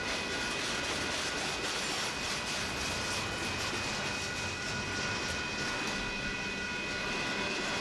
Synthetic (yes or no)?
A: no